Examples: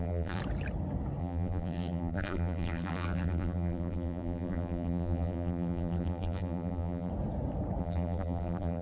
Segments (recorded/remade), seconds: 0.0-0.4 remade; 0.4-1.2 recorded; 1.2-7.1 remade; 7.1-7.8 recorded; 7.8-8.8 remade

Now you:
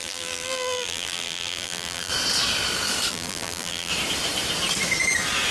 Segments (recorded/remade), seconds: 0.0-2.1 remade; 2.1-3.1 recorded; 3.1-3.9 remade; 3.9-5.5 recorded

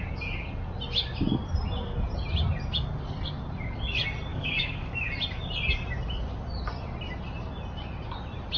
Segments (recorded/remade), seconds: 0.0-4.3 recorded; 4.3-5.1 remade; 5.1-8.6 recorded

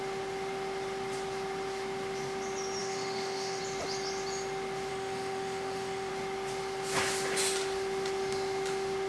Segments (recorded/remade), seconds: 0.0-2.8 recorded; 2.8-3.6 remade; 3.6-4.9 recorded; 4.9-6.1 remade; 6.1-9.1 recorded

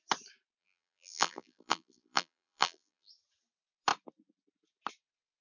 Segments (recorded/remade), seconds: 0.0-0.6 recorded; 0.6-3.1 remade; 3.1-5.4 recorded

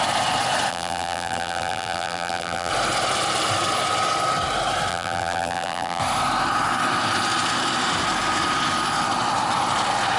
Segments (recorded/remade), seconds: 0.0-0.7 recorded; 0.7-2.7 remade; 2.7-4.9 recorded; 4.9-6.0 remade; 6.0-10.2 recorded

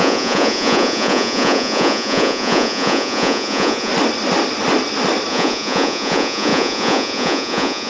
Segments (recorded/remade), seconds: 0.0-3.9 remade; 3.9-5.3 recorded; 5.3-7.9 remade

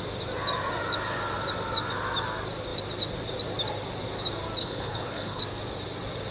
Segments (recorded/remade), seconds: 0.0-4.6 recorded; 4.6-5.4 remade; 5.4-6.3 recorded